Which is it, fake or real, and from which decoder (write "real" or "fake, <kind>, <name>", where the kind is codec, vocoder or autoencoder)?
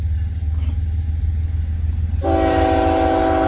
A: real